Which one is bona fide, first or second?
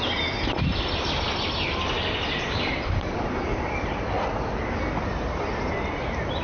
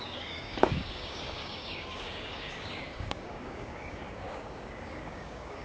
first